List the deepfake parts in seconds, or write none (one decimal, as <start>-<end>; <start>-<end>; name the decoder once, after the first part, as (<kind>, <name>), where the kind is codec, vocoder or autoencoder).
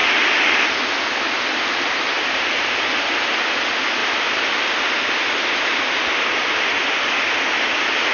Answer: none